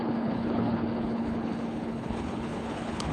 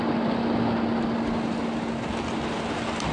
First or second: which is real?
second